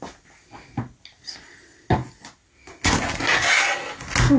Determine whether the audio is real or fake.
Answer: real